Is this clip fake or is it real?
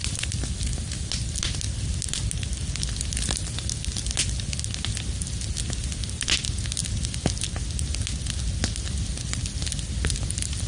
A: real